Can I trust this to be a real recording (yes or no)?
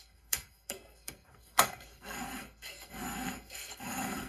no